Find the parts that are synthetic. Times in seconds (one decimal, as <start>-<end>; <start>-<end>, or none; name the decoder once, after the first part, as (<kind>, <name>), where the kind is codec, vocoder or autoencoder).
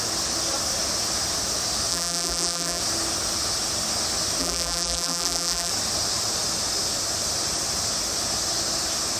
1.9-2.8 (vocoder, BigVGAN v2); 4.4-5.7